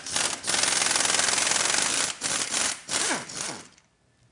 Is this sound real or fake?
real